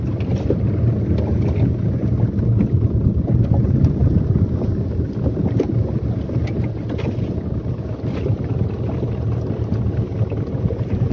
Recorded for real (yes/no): yes